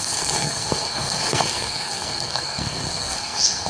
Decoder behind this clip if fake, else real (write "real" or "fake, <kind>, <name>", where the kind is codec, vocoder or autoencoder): fake, codec, SNAC